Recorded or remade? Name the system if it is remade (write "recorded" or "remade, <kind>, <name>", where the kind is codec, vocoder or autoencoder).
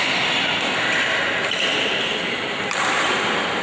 recorded